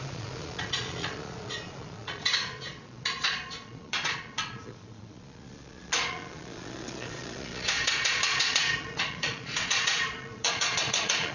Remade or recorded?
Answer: remade